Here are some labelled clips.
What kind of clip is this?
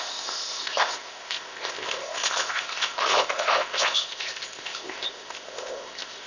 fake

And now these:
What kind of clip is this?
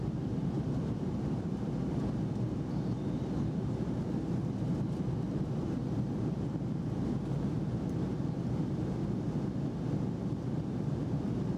fake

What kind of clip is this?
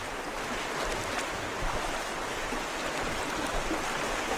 real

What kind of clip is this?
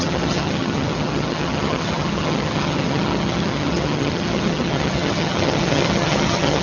fake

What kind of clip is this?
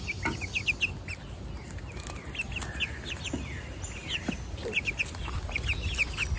real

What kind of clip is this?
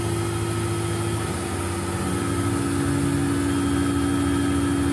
real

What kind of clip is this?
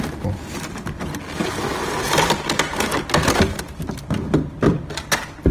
real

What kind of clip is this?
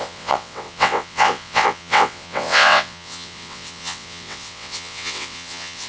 fake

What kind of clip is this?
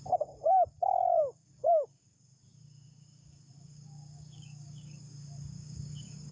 fake